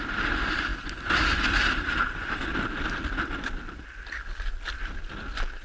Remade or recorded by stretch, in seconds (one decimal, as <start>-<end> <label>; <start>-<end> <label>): 0.0-5.6 recorded